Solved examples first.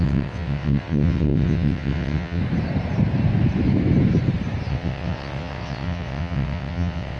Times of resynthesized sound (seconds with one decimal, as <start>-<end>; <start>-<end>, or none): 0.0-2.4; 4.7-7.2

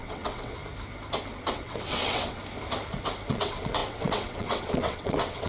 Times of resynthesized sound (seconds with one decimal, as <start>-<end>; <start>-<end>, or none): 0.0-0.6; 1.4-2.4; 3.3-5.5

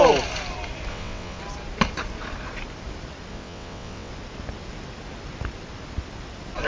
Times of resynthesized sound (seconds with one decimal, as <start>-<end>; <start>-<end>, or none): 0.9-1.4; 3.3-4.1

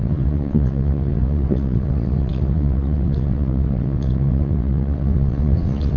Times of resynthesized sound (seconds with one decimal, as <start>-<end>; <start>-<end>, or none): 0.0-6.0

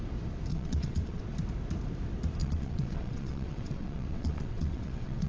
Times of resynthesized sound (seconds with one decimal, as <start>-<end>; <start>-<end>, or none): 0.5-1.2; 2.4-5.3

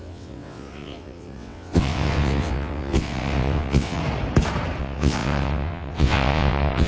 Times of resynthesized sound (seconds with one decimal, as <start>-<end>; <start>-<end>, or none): 0.0-4.0; 4.8-6.9

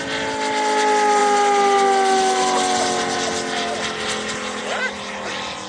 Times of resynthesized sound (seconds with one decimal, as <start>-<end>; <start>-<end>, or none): none

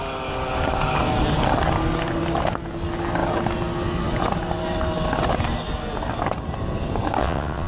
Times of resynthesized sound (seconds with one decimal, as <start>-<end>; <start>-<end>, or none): 7.2-7.7